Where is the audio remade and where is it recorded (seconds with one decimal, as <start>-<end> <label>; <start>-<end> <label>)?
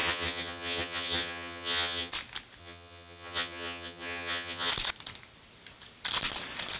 0.0-2.1 remade; 2.1-2.6 recorded; 2.6-4.7 remade; 4.7-6.8 recorded